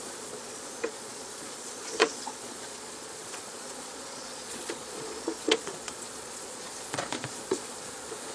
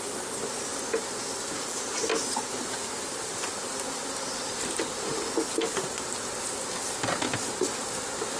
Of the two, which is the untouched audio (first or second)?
second